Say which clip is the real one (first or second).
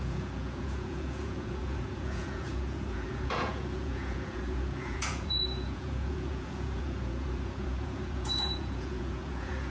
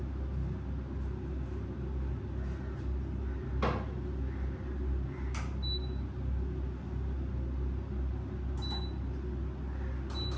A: second